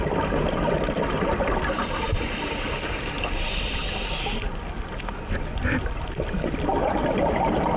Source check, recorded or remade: recorded